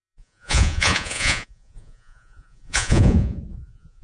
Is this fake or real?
fake